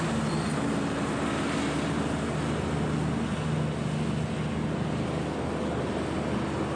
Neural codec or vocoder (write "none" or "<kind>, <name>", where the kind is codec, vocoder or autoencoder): none